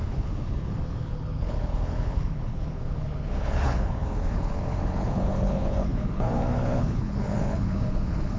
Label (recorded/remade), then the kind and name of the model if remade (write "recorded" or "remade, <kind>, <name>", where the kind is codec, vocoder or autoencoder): remade, codec, HILCodec